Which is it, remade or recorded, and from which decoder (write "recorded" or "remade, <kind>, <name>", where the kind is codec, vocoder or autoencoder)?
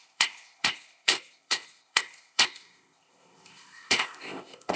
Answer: remade, codec, ZipCodec